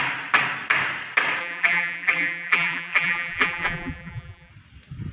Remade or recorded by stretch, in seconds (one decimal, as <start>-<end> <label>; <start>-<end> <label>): 0.0-1.4 recorded; 1.4-4.5 remade; 4.5-5.1 recorded